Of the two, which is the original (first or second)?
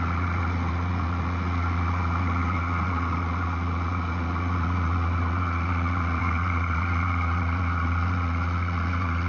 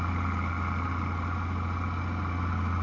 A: second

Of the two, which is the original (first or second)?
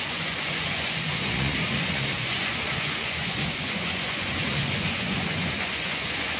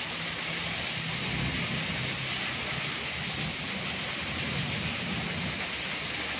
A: second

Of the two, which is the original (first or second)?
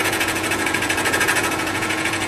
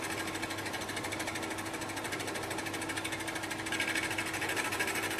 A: second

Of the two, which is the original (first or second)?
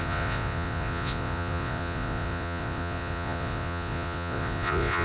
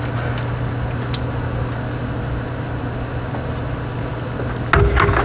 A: second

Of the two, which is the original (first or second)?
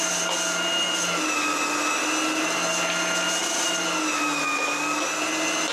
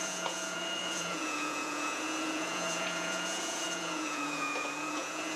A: first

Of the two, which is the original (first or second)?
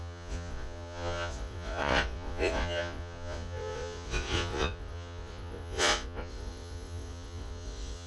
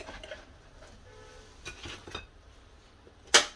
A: second